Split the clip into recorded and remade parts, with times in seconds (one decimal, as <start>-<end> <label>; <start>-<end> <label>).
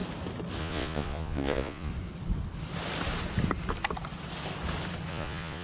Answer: 0.0-0.6 recorded; 0.6-1.9 remade; 1.9-5.1 recorded; 5.1-5.6 remade